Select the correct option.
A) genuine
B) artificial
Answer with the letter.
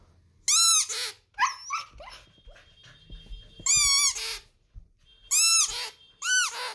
A